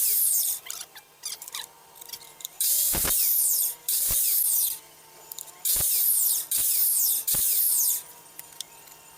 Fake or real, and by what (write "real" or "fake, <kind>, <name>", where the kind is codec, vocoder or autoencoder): fake, vocoder, BigVGAN v2